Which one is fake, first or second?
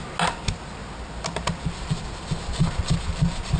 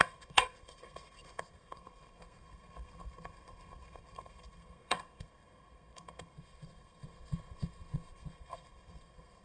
second